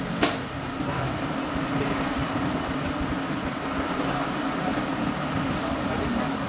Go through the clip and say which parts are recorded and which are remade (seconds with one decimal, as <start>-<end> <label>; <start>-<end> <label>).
0.0-6.5 recorded